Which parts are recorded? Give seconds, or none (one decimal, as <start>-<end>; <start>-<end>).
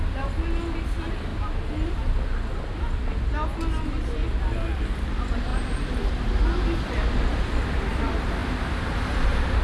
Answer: 0.0-7.3; 7.9-9.6